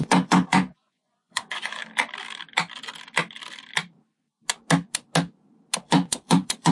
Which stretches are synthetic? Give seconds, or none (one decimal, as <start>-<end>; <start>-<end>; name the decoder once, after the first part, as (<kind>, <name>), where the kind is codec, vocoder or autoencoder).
0.0-1.8 (vocoder, Vocos); 5.8-6.7